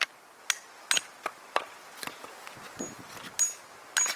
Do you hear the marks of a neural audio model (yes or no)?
no